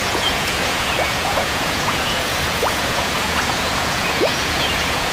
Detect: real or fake fake